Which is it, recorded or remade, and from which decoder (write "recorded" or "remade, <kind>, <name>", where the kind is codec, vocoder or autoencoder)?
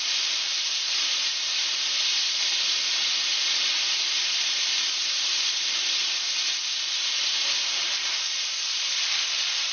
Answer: remade, vocoder, BigVGAN v2